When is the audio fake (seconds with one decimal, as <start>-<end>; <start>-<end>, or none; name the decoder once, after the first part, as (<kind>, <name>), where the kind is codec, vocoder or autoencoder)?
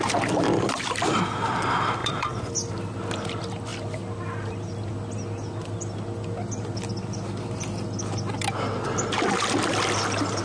2.0-2.5 (vocoder, Vocos)